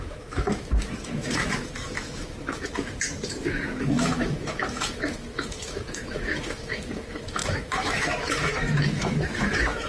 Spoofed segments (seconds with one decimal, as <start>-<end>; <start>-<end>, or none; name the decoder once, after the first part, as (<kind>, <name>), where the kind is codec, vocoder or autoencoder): 0.0-9.9 (autoencoder, DAC-VAE)